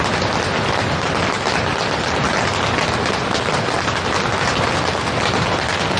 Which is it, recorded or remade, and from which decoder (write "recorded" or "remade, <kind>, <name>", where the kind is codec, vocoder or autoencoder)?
recorded